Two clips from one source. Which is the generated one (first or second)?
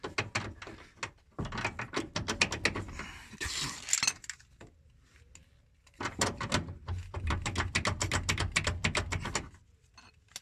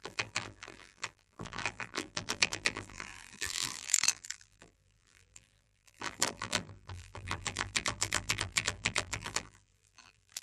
second